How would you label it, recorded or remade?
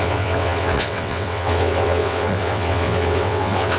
remade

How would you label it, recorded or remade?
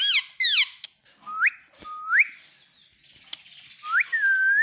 recorded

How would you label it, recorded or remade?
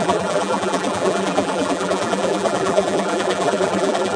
remade